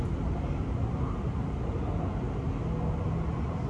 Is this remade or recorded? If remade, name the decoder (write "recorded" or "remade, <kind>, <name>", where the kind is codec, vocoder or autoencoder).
recorded